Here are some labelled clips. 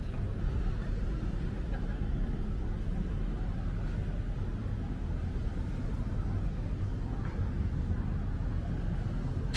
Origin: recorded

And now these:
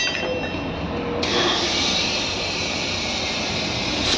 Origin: recorded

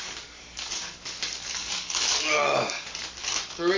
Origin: remade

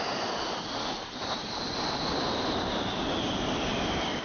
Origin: recorded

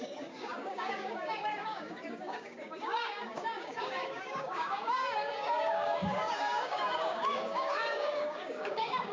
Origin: remade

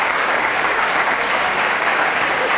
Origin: remade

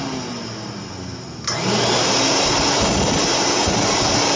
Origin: recorded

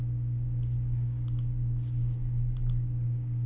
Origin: remade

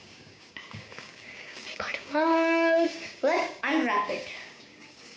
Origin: remade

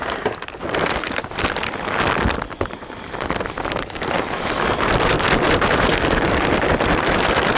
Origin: recorded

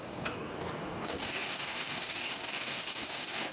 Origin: remade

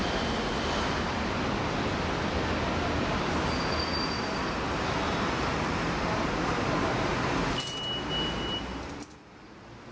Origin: recorded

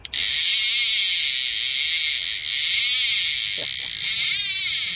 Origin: recorded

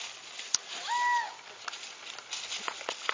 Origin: recorded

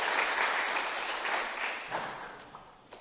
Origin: recorded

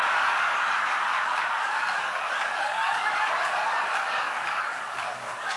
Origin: remade